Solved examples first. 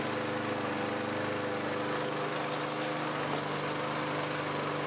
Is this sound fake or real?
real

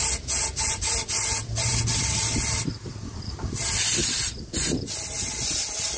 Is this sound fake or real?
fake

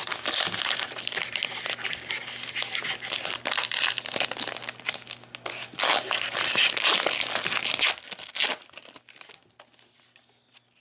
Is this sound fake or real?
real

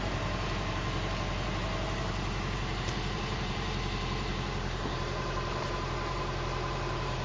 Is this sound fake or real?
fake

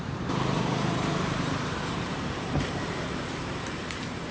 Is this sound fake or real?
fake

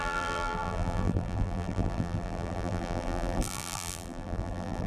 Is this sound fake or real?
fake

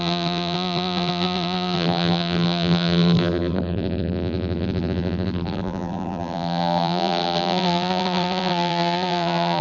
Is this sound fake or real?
fake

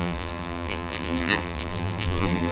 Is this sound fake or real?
fake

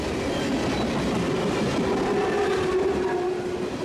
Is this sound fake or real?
real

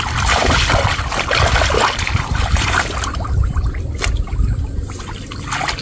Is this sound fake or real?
real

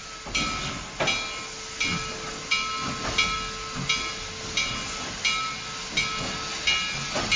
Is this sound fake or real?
real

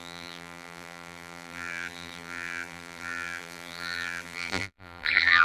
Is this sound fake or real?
fake